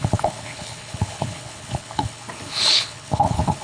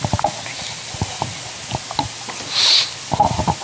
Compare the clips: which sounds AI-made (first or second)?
first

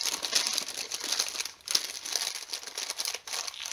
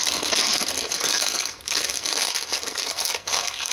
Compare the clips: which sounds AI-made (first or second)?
second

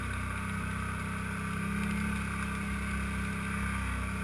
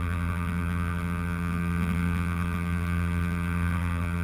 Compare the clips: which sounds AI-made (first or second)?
second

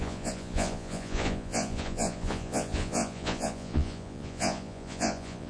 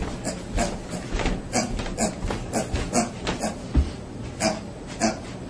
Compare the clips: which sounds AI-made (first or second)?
first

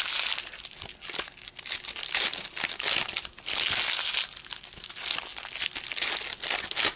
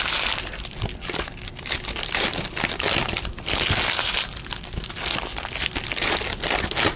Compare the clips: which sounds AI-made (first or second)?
second